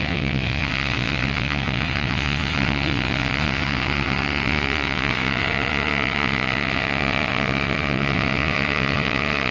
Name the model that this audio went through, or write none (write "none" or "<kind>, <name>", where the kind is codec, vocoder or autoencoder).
vocoder, WaveNeXt